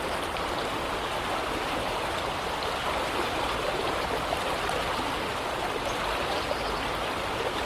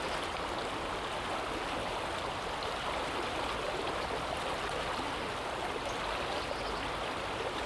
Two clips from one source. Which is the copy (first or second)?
first